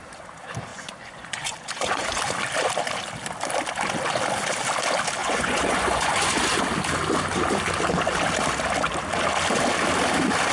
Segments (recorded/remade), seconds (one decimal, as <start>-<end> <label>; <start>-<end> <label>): 0.0-0.7 recorded; 0.7-2.2 remade; 2.2-5.2 recorded; 5.2-6.6 remade; 6.6-10.5 recorded